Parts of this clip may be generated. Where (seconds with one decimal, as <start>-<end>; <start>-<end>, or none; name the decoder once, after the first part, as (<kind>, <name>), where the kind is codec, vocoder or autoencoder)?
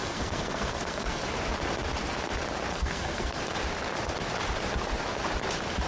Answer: 0.0-1.2 (codec, SNAC); 2.7-3.4